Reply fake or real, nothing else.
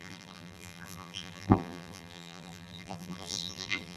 fake